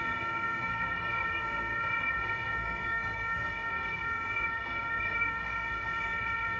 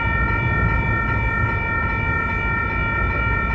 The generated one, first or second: first